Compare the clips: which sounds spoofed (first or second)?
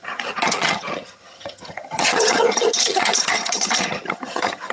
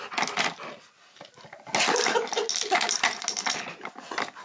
first